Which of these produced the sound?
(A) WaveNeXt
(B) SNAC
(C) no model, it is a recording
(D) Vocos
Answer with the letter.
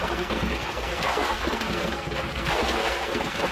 B